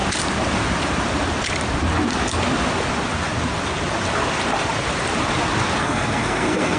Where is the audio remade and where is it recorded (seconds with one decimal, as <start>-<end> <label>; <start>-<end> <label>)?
0.0-5.8 recorded; 5.8-6.8 remade